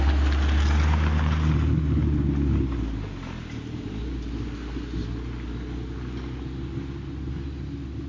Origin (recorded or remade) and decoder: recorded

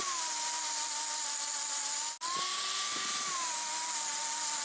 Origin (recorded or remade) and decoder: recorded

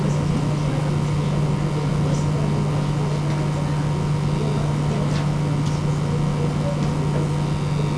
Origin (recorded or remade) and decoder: recorded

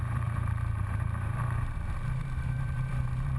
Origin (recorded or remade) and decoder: remade, vocoder, BigVGAN v2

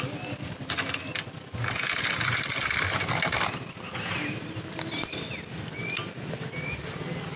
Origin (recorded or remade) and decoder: recorded